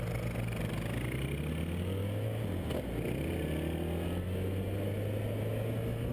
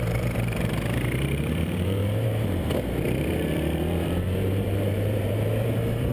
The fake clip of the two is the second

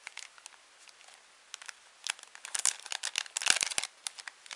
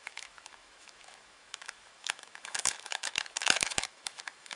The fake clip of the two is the second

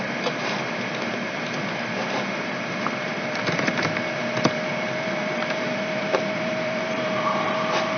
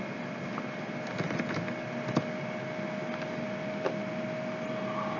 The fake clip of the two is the first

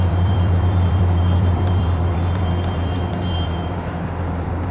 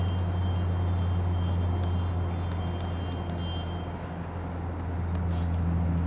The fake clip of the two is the first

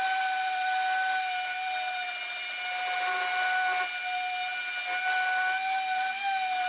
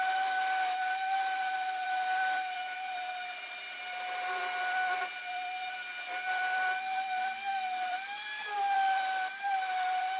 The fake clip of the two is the second